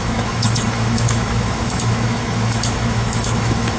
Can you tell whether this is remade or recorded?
remade